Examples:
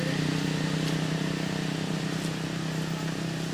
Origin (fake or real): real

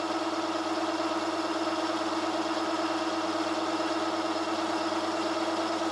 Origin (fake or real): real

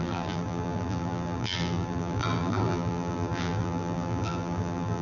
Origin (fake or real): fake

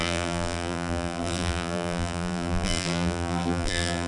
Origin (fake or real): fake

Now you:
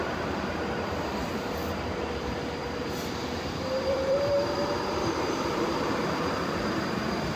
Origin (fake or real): fake